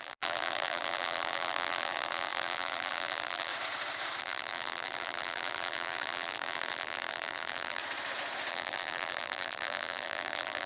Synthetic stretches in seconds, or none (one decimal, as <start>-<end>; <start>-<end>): 0.0-3.5; 4.2-7.8; 8.5-10.7